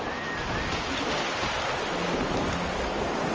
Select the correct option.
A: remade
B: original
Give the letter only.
B